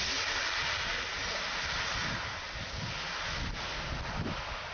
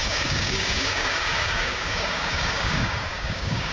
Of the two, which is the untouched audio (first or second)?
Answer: first